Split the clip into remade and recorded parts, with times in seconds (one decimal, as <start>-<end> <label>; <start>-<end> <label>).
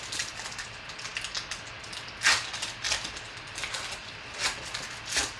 0.0-5.4 recorded